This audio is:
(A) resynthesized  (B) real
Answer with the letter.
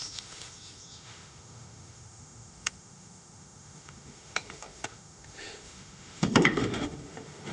A